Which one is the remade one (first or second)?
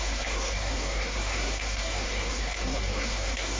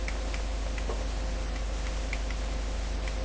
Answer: first